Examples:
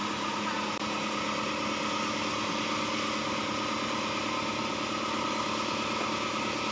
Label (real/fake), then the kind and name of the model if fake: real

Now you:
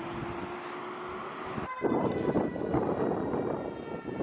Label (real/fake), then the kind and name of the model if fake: real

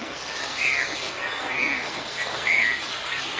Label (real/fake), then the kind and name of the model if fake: fake, codec, SNAC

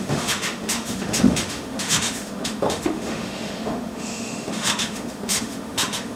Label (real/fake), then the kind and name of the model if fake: fake, autoencoder, DAC-VAE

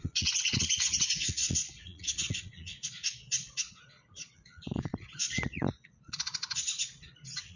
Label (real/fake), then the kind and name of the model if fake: fake, vocoder, Vocos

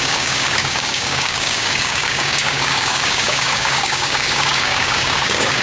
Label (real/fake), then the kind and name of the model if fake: fake, codec, DAC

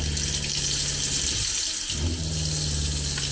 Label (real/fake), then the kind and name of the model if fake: real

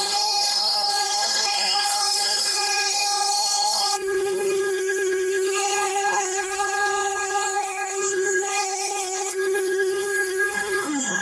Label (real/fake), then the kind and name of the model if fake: fake, codec, SNAC